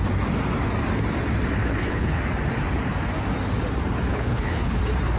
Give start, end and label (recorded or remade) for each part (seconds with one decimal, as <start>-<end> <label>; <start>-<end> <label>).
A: 0.0-1.6 recorded; 1.6-2.2 remade; 2.2-4.1 recorded; 4.1-4.8 remade; 4.8-5.2 recorded